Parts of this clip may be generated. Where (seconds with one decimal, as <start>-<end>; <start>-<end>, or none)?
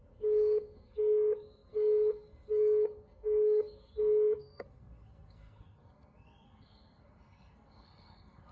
0.0-8.5